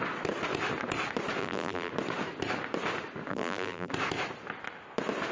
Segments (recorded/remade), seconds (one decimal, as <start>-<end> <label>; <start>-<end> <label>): 0.0-1.4 recorded; 1.4-1.9 remade; 1.9-3.3 recorded; 3.3-3.9 remade; 3.9-5.3 recorded